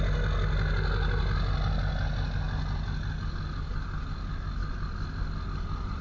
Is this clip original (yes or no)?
yes